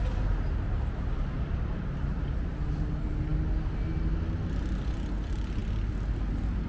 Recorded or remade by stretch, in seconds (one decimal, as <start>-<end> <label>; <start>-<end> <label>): 0.0-6.7 recorded